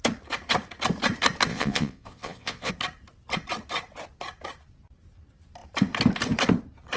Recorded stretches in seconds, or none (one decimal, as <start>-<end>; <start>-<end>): 0.0-1.5; 2.7-7.0